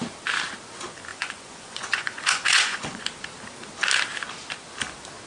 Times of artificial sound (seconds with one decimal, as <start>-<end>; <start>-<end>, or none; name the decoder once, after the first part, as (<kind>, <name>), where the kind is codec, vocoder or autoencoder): 1.1-3.0 (vocoder, Vocos)